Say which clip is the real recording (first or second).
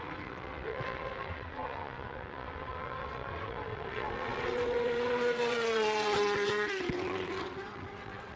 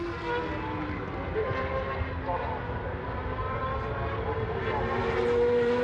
second